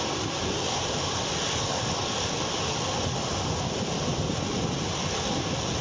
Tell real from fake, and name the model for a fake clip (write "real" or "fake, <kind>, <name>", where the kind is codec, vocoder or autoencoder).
real